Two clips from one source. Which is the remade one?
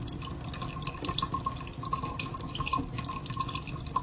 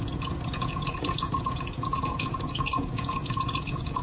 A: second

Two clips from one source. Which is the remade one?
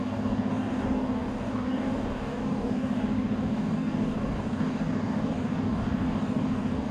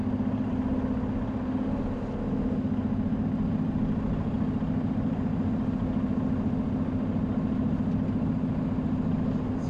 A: first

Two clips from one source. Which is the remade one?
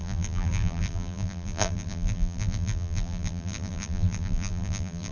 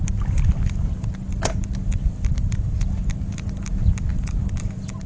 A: first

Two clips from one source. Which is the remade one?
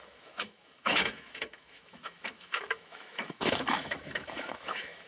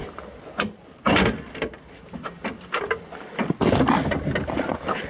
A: first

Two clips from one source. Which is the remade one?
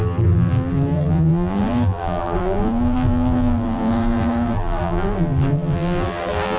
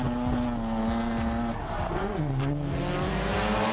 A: first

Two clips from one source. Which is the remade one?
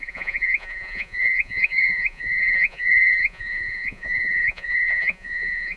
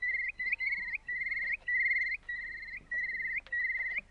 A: first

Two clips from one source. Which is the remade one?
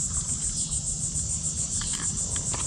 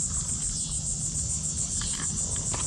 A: first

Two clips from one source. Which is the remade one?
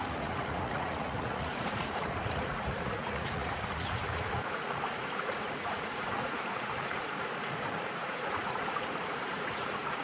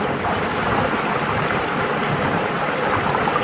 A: first